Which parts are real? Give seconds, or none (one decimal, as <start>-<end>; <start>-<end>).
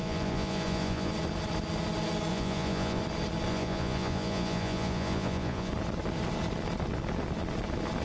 1.1-2.3; 3.0-3.5; 5.7-8.0